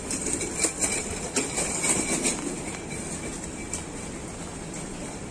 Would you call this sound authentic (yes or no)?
yes